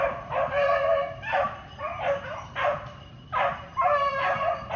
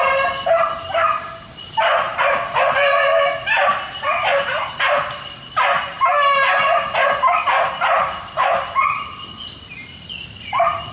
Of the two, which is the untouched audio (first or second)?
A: second